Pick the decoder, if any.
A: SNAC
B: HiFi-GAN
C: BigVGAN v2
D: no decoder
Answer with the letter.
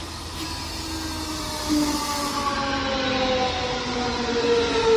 D